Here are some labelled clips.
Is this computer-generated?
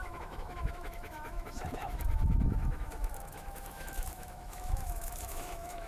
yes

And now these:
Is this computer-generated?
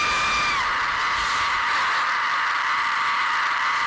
no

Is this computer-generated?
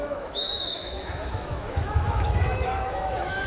yes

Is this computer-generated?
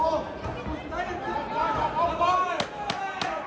no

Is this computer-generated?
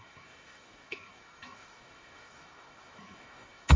yes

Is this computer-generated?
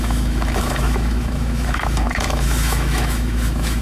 yes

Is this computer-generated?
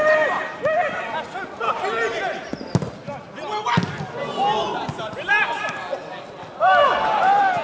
no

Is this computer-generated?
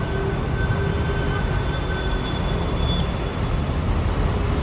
no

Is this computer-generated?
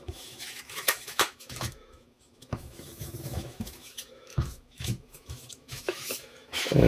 yes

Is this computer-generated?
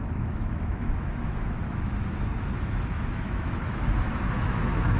yes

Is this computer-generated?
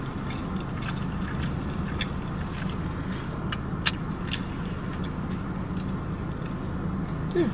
no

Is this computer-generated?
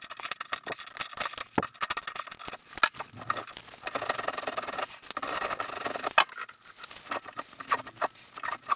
no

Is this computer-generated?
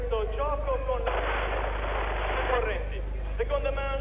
no